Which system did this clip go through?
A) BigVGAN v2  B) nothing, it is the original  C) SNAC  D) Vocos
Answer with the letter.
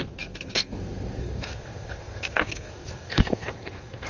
C